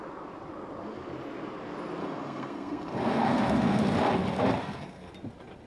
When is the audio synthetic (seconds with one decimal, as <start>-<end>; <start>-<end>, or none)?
2.0-3.8; 4.6-5.1